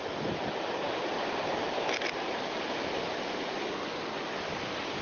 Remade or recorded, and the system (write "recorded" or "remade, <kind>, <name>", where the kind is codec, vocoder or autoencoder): recorded